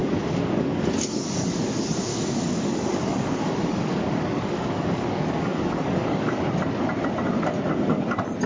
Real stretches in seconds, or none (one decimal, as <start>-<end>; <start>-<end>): 1.4-2.1; 6.4-8.5